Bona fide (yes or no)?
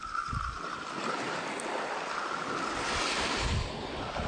yes